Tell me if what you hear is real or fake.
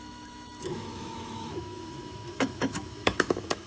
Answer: fake